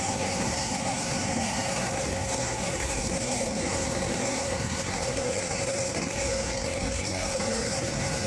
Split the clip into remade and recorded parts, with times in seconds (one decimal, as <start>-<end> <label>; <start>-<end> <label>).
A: 0.0-8.3 remade